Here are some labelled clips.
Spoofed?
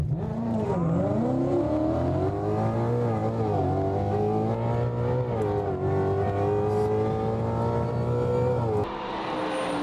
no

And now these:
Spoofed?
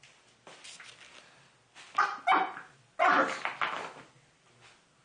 no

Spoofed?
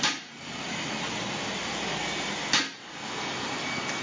no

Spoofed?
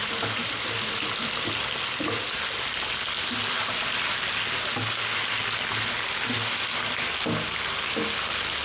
no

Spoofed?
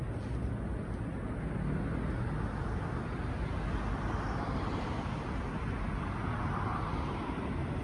no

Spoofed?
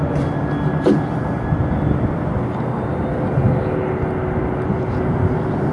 no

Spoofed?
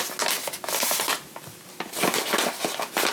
no